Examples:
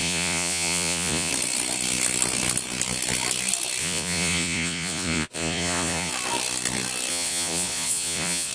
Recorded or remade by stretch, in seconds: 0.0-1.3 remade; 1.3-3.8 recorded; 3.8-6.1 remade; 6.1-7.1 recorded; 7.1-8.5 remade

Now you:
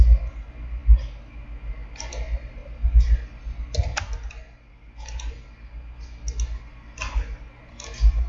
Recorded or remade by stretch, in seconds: 0.0-8.3 recorded

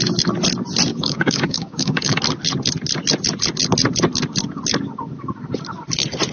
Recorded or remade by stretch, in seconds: 0.0-0.9 recorded; 0.9-2.2 remade; 2.2-6.3 recorded

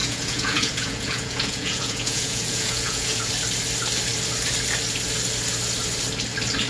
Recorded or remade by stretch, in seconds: 0.0-3.3 remade; 3.3-6.7 recorded

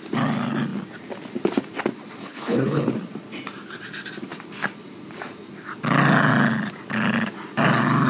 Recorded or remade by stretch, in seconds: 0.0-2.2 recorded; 2.2-2.8 remade; 2.8-8.1 recorded

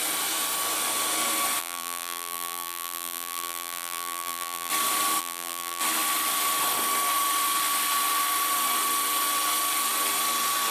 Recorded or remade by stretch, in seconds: 0.0-1.6 recorded; 1.6-4.7 remade; 4.7-5.2 recorded; 5.2-5.8 remade; 5.8-10.7 recorded

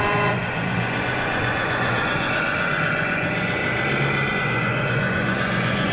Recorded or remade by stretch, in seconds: 0.0-3.6 remade; 3.6-4.3 recorded; 4.3-5.9 remade

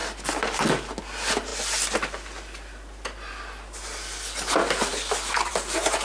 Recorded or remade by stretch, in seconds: 0.0-6.0 recorded